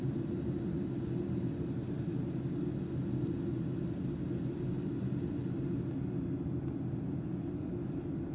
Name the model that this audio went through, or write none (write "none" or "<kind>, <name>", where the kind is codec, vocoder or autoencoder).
none